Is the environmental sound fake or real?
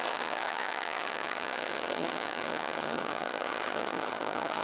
fake